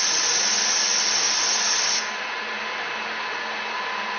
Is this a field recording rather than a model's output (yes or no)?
yes